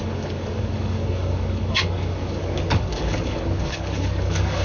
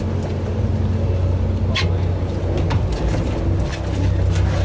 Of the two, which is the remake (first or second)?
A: first